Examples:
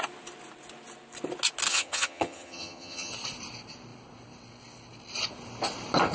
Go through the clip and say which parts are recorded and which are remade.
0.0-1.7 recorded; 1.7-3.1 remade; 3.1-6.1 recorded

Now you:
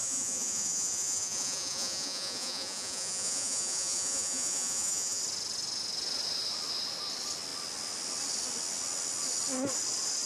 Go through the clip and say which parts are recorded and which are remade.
0.0-5.2 remade; 5.2-10.3 recorded

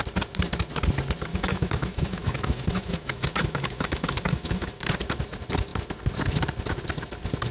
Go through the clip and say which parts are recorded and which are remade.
0.0-1.3 recorded; 1.3-4.9 remade; 4.9-7.5 recorded

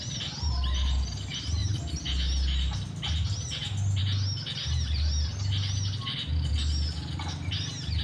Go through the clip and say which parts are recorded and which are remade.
0.0-8.0 recorded

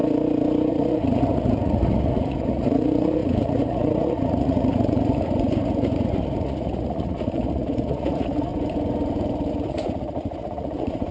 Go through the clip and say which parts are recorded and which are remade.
0.0-0.7 recorded; 0.7-8.5 remade; 8.5-9.5 recorded; 9.5-11.1 remade

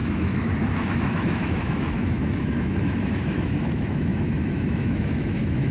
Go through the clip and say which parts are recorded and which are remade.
0.0-5.7 remade

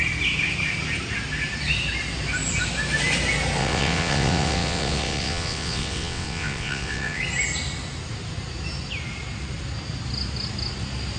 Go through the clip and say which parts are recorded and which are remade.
0.0-3.6 recorded; 3.6-7.2 remade; 7.2-11.2 recorded